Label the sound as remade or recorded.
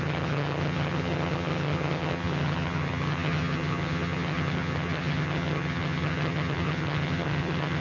remade